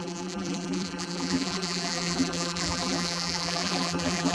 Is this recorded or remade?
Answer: remade